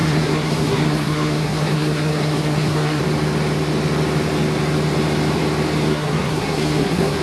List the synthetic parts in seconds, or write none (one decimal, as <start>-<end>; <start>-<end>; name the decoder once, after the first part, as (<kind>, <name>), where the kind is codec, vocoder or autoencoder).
0.0-3.0 (codec, SNAC); 5.9-7.2

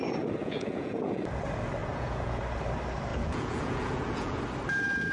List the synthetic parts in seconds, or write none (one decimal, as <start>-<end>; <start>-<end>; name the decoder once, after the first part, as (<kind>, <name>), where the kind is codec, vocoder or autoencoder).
0.4-1.2 (vocoder, Vocos); 1.8-2.4; 3.1-4.4

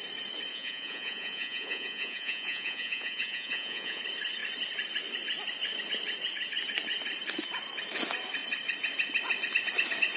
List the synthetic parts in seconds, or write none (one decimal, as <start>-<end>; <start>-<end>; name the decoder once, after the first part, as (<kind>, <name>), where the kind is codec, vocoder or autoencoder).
0.5-4.0 (vocoder, Vocos)

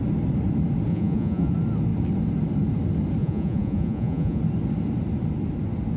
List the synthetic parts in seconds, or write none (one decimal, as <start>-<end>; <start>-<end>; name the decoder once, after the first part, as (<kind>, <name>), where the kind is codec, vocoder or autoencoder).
0.9-1.5 (vocoder, Vocos); 3.2-4.4

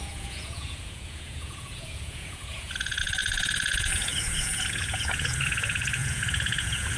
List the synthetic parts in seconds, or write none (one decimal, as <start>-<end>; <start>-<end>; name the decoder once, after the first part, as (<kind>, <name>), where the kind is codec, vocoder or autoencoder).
0.0-7.0 (vocoder, Vocos)

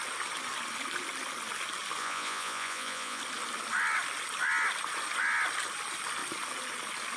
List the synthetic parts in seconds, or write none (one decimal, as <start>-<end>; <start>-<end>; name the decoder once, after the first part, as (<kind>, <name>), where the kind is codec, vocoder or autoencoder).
2.0-3.2 (vocoder, Vocos)

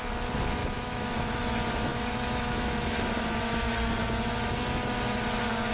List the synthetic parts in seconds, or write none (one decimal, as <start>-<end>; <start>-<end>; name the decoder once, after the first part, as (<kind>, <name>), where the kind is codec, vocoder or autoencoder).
0.6-1.4 (autoencoder, DAC-VAE); 1.9-3.1

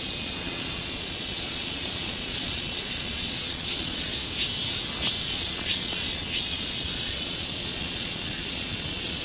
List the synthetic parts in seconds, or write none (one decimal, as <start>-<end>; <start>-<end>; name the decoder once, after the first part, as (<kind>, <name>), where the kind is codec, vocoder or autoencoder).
0.0-4.1 (vocoder, Vocos); 5.2-9.2